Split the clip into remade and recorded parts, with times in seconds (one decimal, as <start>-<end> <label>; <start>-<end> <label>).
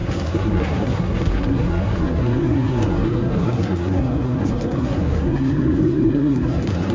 0.0-6.9 remade